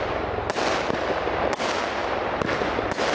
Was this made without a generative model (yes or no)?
yes